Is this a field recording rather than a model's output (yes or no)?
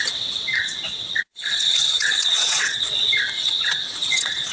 no